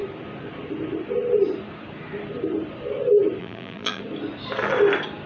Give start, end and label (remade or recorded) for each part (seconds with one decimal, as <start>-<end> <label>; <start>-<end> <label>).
0.0-3.4 recorded; 3.4-4.0 remade; 4.0-5.3 recorded